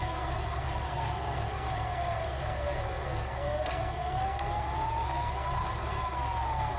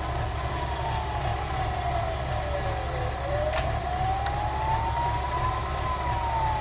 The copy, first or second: first